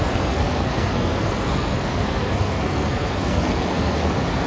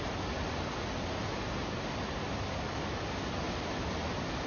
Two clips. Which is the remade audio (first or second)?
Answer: first